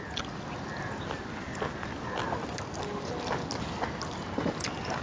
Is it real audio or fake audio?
real